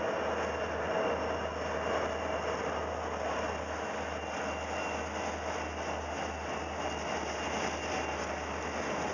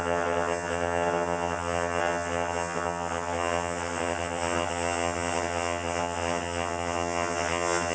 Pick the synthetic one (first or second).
second